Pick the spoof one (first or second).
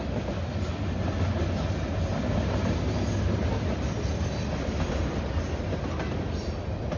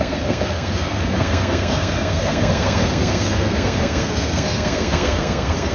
second